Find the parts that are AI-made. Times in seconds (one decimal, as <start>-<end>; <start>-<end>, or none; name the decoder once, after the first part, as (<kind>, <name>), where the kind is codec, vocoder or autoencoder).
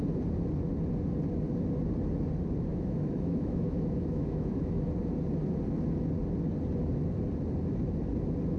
2.7-4.9 (autoencoder, DAC-VAE)